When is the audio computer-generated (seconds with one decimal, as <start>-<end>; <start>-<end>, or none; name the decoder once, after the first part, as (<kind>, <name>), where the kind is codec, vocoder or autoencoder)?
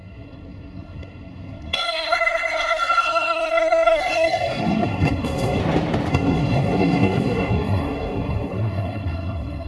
0.0-5.6 (codec, SNAC); 6.1-9.7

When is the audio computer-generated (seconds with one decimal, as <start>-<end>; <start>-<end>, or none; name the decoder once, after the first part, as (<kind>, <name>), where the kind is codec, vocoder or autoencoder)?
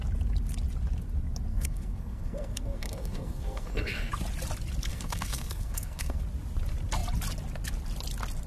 1.5-4.1 (codec, SNAC); 4.9-6.2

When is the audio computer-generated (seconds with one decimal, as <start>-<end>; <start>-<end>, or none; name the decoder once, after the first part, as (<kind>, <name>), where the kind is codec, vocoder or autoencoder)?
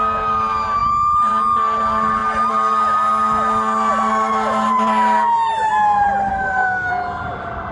6.3-6.9 (codec, SNAC)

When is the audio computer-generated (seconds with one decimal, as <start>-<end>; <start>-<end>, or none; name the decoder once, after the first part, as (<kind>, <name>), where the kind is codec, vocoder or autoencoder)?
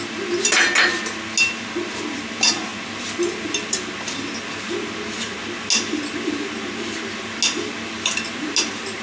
none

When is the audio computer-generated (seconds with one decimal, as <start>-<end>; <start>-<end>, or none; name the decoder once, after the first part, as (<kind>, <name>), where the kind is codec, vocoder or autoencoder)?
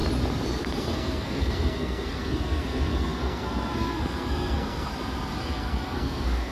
0.6-4.9 (codec, SNAC); 5.4-6.5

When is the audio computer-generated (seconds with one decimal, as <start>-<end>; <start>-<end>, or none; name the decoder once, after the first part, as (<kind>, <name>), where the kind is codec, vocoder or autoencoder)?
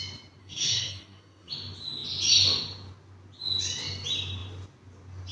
0.4-1.5 (codec, SNAC)